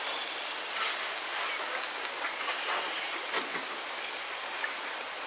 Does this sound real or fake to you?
real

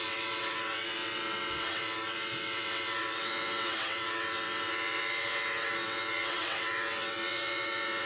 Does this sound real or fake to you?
fake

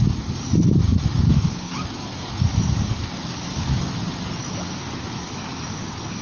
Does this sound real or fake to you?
real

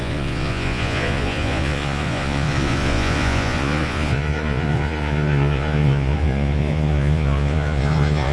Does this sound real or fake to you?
fake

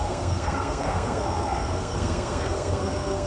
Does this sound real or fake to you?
fake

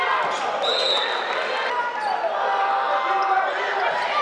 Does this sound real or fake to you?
real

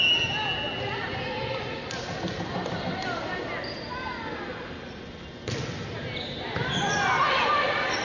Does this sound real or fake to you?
real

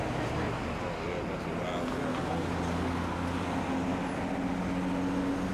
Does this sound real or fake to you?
real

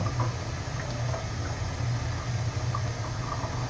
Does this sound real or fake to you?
real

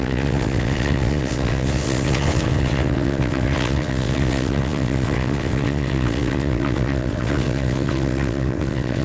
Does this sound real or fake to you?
fake